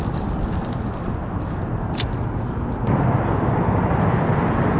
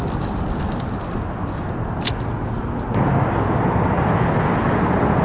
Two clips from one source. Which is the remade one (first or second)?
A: first